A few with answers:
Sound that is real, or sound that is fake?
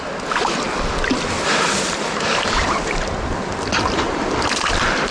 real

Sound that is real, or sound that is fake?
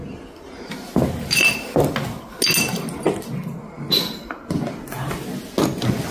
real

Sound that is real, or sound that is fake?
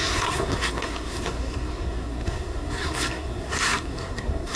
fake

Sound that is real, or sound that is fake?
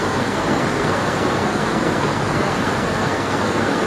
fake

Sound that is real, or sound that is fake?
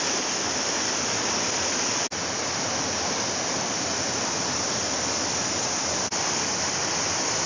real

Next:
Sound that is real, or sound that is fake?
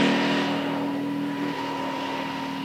real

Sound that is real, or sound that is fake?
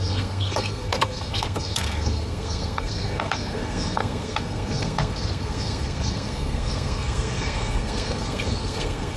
fake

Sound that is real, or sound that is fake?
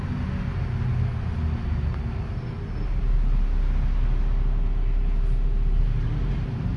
real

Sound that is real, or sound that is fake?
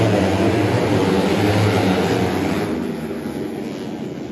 real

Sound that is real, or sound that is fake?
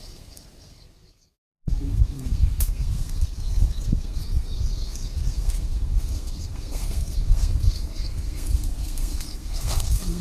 fake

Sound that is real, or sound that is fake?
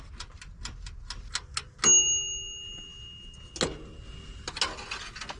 real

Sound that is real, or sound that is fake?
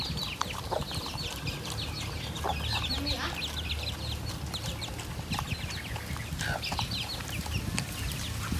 real